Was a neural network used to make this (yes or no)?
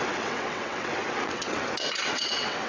yes